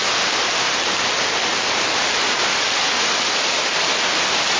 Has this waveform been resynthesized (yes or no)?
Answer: no